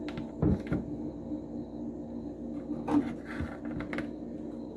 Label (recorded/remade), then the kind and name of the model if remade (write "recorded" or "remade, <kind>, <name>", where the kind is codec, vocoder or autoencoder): recorded